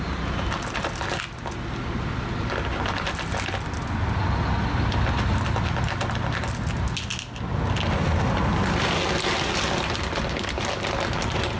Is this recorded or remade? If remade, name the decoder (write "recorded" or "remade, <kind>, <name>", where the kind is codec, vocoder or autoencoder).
recorded